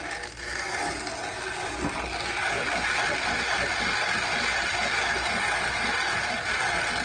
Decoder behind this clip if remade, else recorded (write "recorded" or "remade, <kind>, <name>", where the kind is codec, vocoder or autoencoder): recorded